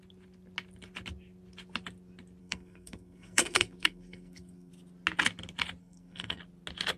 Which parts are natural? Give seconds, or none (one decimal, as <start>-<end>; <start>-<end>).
0.0-2.4; 4.7-5.8; 6.4-7.0